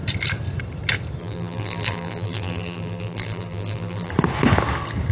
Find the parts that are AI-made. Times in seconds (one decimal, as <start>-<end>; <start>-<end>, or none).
1.2-4.1